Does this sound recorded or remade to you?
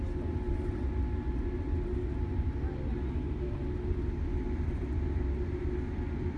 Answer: recorded